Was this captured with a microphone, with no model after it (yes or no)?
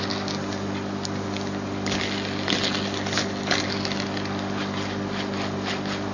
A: yes